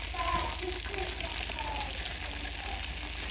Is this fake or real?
real